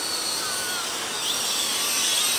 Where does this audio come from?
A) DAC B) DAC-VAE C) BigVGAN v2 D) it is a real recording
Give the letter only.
D